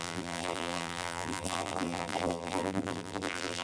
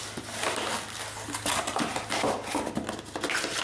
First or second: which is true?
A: second